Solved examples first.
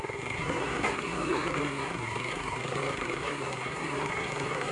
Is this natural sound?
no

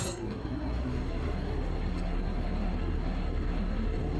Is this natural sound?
no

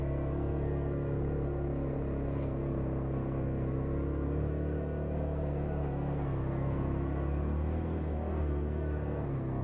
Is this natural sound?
no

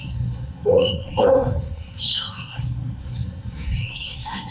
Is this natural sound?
no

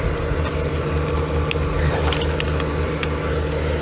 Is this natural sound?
yes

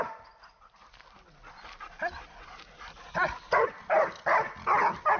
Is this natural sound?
yes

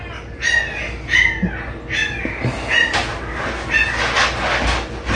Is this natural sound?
yes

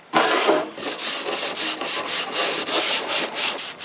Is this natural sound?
yes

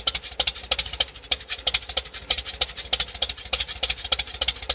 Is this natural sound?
yes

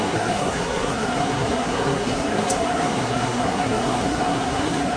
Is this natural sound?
no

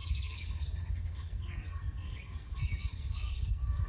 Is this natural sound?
no